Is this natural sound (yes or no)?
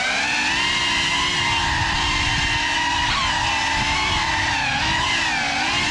yes